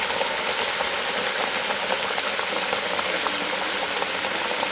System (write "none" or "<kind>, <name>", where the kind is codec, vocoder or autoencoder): none